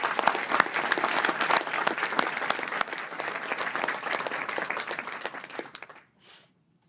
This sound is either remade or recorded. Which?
recorded